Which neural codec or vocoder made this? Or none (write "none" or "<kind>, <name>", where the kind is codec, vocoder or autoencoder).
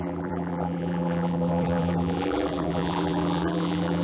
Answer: vocoder, BigVGAN v2